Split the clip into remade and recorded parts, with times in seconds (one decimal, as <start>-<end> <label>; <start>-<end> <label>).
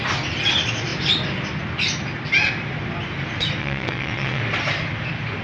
0.0-3.6 recorded; 3.6-4.4 remade; 4.4-5.4 recorded